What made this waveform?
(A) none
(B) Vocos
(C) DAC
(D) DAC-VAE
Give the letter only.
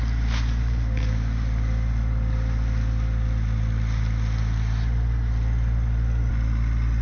A